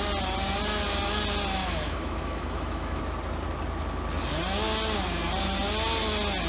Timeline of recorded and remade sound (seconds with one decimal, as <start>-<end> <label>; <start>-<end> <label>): 0.0-1.6 recorded; 1.6-3.0 remade; 3.0-6.5 recorded